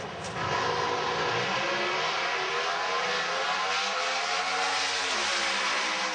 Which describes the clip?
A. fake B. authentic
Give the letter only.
B